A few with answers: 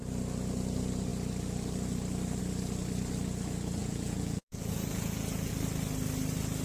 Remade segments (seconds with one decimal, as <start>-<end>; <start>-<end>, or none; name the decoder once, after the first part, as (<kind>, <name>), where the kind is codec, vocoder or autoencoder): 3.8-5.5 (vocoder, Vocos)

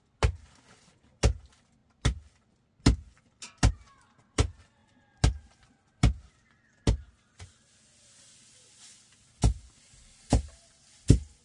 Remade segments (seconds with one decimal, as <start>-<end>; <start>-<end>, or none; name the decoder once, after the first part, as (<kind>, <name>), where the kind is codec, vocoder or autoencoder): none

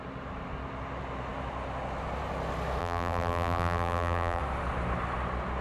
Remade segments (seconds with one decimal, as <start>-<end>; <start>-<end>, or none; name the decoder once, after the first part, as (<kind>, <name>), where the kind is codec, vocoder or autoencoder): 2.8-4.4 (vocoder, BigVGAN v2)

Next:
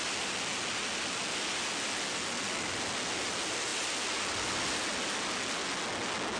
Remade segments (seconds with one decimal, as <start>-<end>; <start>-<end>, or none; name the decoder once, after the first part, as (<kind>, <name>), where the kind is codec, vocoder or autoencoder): none

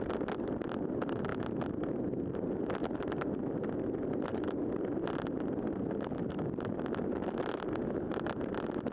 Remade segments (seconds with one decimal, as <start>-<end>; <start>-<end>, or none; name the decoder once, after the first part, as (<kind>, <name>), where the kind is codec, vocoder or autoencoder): none

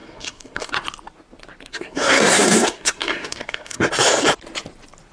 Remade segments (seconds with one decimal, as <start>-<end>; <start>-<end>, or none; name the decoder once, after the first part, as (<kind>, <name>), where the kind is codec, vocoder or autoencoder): 0.0-0.7 (codec, SNAC); 1.7-3.9